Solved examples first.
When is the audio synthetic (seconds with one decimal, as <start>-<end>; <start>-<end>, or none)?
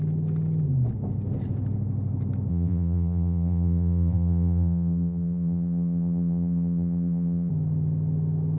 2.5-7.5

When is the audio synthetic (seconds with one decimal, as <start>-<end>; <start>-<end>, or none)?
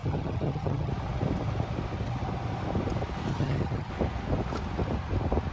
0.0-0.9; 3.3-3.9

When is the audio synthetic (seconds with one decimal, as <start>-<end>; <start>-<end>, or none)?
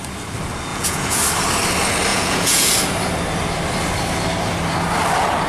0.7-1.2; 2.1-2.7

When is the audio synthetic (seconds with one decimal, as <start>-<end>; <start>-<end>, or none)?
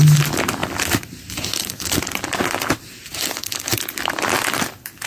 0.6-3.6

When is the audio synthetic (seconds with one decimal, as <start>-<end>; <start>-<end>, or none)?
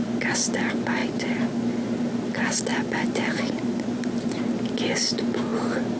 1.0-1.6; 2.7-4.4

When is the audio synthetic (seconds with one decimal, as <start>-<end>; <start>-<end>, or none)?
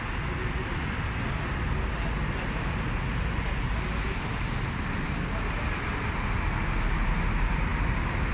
none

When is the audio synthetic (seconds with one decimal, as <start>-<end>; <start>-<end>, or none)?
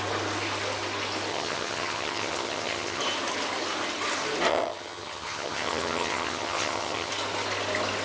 1.3-3.0; 4.5-7.1